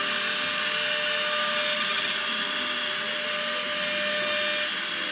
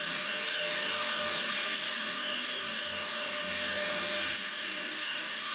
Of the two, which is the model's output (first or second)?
second